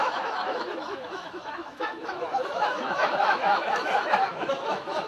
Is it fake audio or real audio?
fake